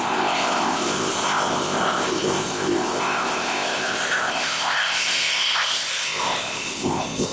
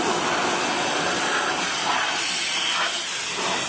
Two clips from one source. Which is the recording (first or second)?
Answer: second